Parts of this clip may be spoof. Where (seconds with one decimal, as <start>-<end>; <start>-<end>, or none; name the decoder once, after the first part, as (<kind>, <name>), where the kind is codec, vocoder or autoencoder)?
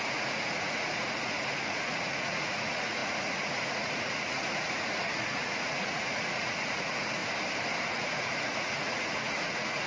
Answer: 0.0-7.2 (vocoder, Vocos); 7.9-9.9